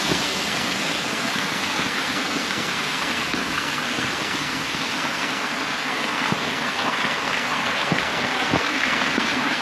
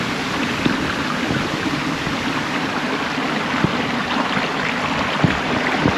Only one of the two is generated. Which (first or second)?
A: first